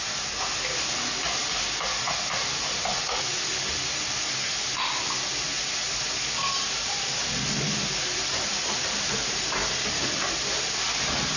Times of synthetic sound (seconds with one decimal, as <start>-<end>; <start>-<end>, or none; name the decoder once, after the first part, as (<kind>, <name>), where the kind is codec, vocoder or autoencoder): 2.9-3.5 (vocoder, Vocos)